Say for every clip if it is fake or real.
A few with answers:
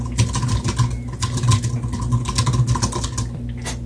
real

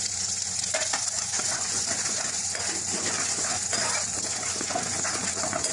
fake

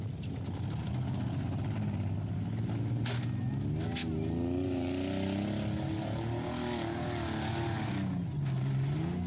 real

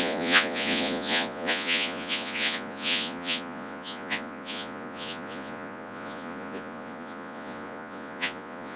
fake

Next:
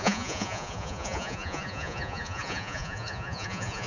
fake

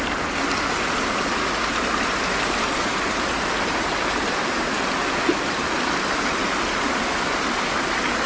real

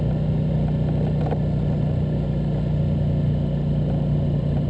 real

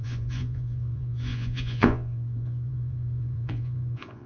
fake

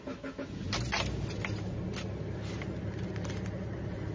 real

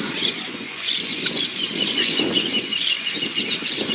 fake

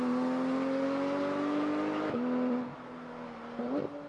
real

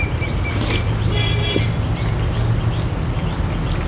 real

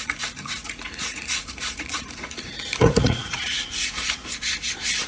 fake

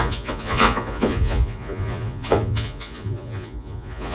fake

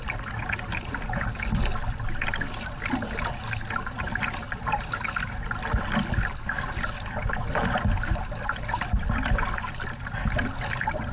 real